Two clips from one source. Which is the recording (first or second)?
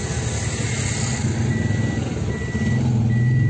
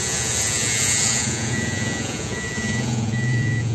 first